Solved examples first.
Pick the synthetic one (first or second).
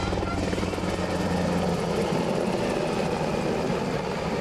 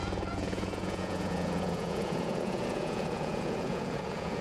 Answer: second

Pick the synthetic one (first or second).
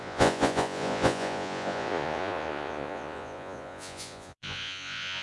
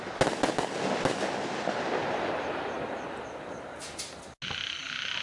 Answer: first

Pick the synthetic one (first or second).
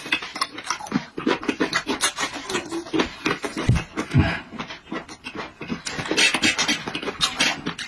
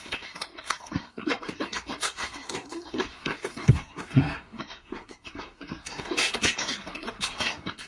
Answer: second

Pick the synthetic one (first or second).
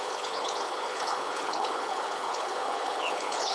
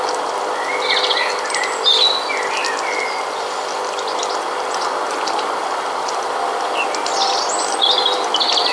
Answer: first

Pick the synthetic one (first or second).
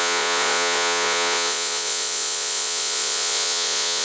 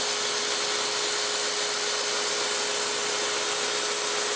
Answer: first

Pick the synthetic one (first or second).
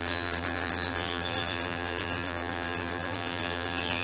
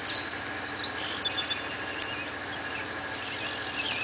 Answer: first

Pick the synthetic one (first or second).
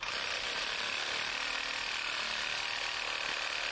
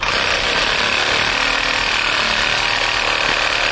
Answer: first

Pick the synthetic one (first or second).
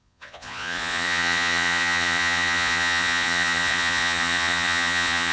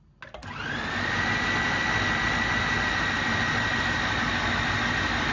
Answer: first